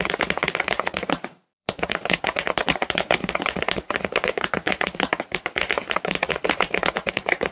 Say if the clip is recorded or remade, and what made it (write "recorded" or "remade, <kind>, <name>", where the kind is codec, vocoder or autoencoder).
remade, vocoder, Vocos